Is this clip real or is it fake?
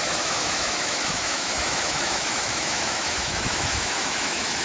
fake